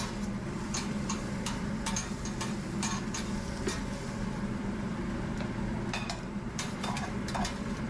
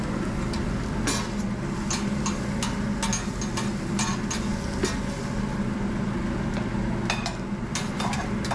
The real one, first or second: second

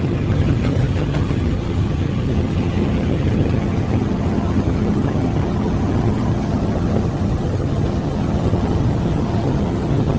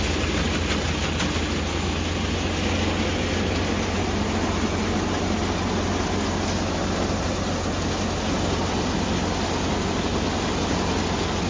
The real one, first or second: second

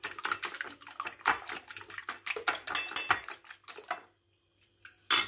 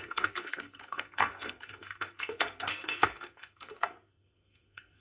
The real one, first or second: first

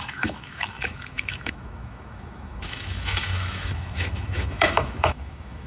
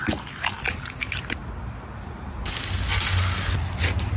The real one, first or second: second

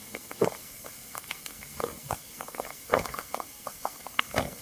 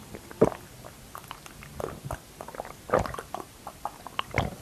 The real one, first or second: second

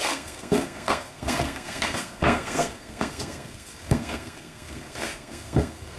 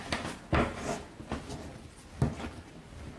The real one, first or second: second